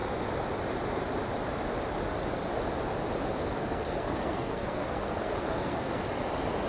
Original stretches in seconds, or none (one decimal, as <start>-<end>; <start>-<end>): 0.0-3.3; 6.0-6.7